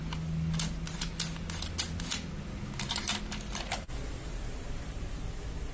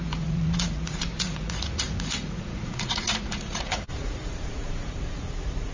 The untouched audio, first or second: first